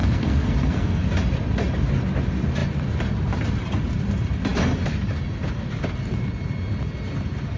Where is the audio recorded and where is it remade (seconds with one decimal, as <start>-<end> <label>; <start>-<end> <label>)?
0.0-1.0 remade; 1.0-7.6 recorded

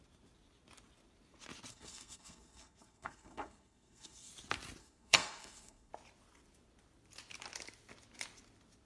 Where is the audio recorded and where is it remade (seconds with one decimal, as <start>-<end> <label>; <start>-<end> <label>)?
0.0-1.7 recorded; 1.7-4.3 remade; 4.3-4.8 recorded; 4.8-5.9 remade; 5.9-8.9 recorded

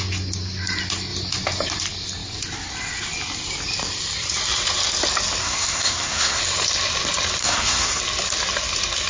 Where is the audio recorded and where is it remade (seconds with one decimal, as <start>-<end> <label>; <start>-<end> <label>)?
0.0-5.4 recorded; 5.4-6.4 remade; 6.4-7.4 recorded; 7.4-8.0 remade; 8.0-9.1 recorded

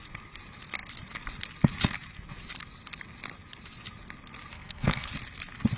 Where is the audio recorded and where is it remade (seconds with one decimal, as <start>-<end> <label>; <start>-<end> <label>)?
0.0-4.5 recorded; 4.5-5.1 remade; 5.1-5.8 recorded

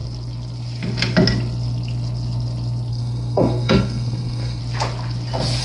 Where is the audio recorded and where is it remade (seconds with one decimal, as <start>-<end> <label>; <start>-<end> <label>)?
0.0-2.9 recorded; 2.9-4.6 remade; 4.6-5.6 recorded

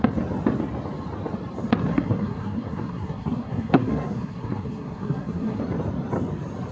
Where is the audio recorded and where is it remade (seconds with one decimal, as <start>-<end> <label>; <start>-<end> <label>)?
0.0-1.9 recorded; 1.9-5.6 remade; 5.6-6.7 recorded

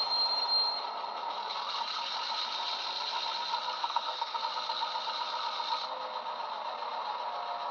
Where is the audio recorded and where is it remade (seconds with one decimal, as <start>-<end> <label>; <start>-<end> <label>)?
0.0-3.8 recorded; 3.8-4.4 remade; 4.4-7.7 recorded